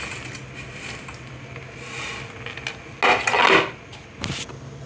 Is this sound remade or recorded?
recorded